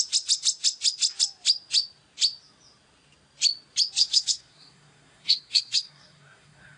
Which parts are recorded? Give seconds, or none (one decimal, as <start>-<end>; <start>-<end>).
0.0-4.0